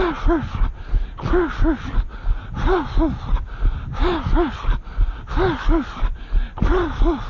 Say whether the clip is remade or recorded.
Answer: recorded